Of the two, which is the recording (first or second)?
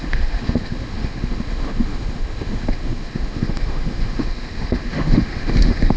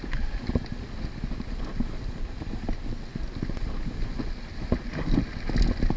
second